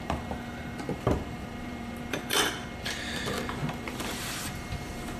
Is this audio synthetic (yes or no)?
yes